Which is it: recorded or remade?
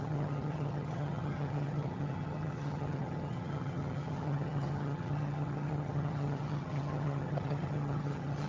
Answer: remade